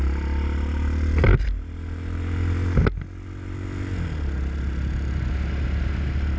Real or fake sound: real